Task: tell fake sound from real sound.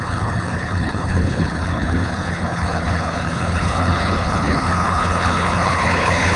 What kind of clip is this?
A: fake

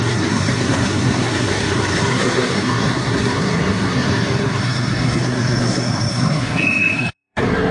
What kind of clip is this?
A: fake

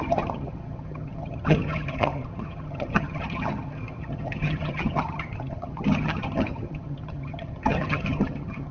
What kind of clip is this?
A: fake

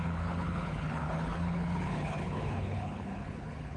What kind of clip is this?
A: fake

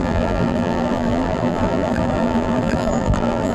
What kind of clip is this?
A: fake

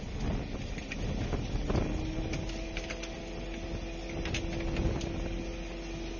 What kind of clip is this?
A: real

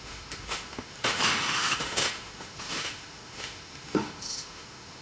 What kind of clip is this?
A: fake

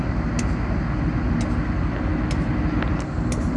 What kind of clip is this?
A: real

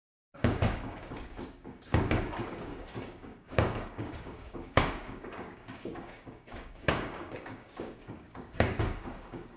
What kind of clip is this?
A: fake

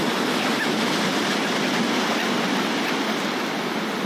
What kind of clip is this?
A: real